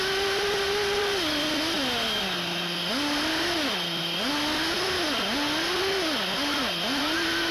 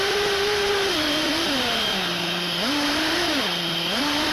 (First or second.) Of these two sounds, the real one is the first